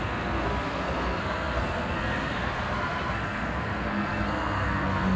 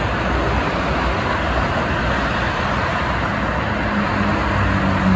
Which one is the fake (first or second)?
first